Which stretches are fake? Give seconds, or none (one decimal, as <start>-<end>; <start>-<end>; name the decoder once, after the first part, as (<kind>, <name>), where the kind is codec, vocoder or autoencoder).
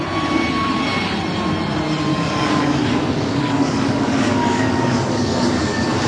2.1-6.1 (codec, DAC)